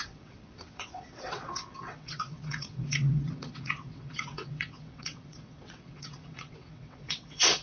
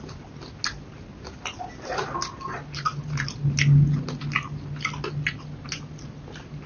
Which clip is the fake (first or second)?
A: first